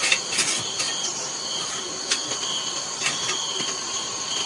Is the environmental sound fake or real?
real